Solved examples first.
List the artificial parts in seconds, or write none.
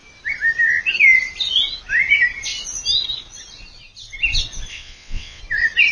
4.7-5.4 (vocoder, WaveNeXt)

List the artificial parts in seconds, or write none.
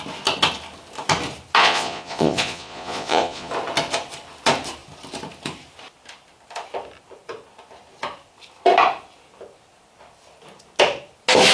1.6-3.5 (vocoder, Vocos)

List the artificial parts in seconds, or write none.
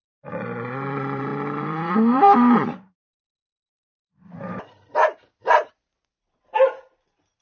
0.0-7.4 (vocoder, BigVGAN v2)